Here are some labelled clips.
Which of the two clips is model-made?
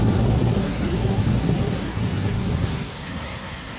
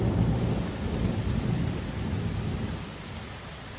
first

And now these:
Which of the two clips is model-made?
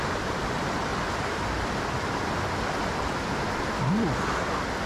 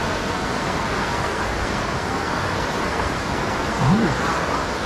second